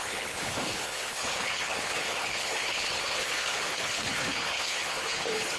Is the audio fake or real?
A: fake